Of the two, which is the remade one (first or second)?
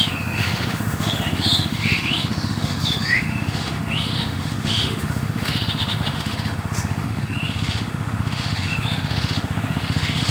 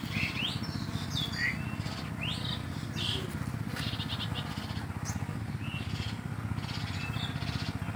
first